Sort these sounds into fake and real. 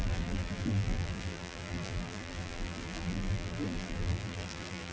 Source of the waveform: fake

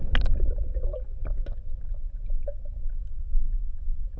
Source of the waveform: real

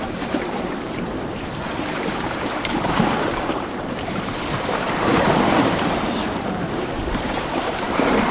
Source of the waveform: fake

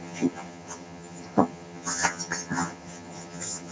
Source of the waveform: fake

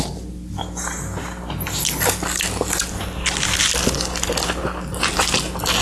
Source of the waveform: real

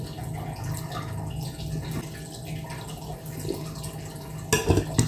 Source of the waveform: real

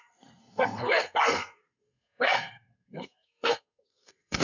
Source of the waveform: fake